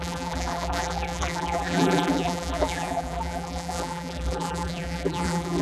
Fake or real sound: fake